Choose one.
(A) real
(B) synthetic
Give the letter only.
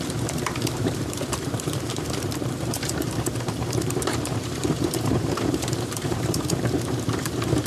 B